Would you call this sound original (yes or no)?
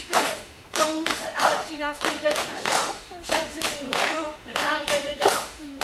no